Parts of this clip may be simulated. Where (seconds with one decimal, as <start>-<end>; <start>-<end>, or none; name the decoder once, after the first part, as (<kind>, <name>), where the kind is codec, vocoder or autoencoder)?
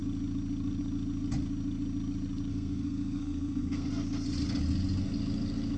2.5-3.9 (codec, SNAC)